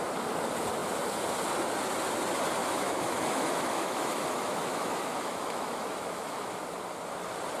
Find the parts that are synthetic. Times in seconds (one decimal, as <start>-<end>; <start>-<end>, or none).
2.6-6.6

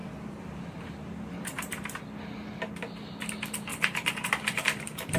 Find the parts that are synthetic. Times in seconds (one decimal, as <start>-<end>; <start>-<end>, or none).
0.0-2.0; 3.7-5.2

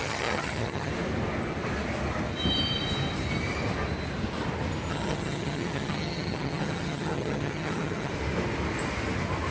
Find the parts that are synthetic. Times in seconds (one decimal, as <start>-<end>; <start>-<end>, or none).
0.0-0.9; 4.9-8.1

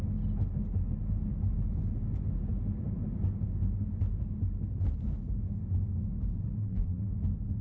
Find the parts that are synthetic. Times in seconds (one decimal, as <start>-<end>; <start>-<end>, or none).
6.6-7.1

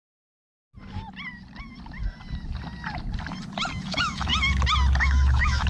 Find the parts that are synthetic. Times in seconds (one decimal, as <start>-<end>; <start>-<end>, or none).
0.0-0.4; 3.8-4.3; 5.0-5.7

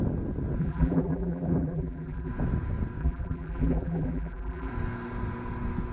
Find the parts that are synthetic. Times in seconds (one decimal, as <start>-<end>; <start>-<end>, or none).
0.6-2.3; 3.0-4.7